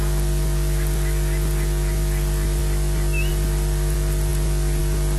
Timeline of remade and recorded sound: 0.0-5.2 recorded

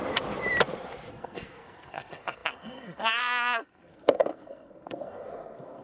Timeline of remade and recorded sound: 0.0-1.1 recorded; 1.1-5.8 remade

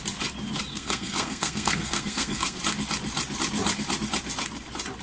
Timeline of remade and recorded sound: 0.0-0.7 recorded; 0.7-2.6 remade; 2.6-5.0 recorded

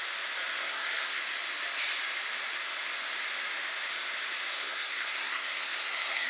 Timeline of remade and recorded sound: 0.0-0.6 recorded; 0.6-1.2 remade; 1.2-4.5 recorded; 4.5-6.3 remade

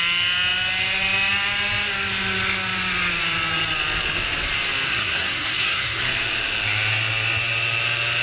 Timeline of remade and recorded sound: 0.0-4.9 recorded; 4.9-6.0 remade; 6.0-8.2 recorded